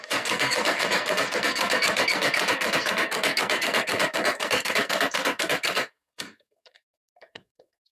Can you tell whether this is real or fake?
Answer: fake